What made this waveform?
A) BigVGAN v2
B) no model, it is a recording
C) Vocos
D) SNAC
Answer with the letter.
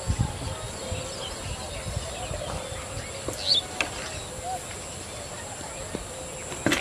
B